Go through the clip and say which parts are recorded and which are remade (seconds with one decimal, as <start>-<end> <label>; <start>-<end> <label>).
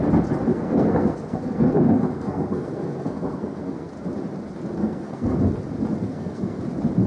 0.0-0.5 recorded; 0.5-3.9 remade; 3.9-4.8 recorded; 4.8-5.4 remade; 5.4-6.0 recorded; 6.0-6.6 remade; 6.6-7.1 recorded